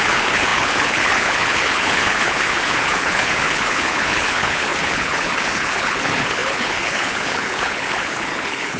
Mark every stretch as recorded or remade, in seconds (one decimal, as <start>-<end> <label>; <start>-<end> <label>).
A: 0.0-8.8 remade